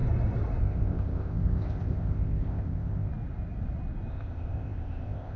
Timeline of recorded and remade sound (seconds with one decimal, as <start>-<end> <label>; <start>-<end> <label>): 0.0-0.6 recorded; 0.6-3.1 remade; 3.1-4.1 recorded; 4.1-5.4 remade

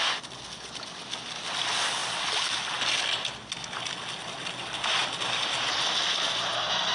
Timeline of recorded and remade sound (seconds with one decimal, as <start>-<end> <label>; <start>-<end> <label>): 0.0-2.0 recorded; 2.0-2.8 remade; 2.8-5.0 recorded; 5.0-5.8 remade; 5.8-6.9 recorded